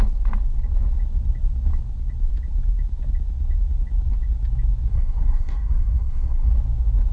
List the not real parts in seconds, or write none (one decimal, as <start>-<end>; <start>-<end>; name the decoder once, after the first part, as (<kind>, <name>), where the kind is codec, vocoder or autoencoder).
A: 4.9-6.5 (codec, SNAC)